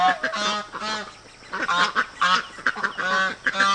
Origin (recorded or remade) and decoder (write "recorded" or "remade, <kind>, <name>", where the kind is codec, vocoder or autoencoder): recorded